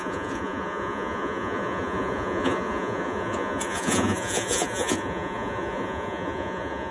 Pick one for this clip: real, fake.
fake